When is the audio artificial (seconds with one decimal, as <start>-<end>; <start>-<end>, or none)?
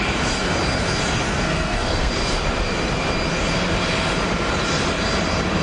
1.3-2.1